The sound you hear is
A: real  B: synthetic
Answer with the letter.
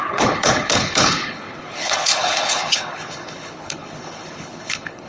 B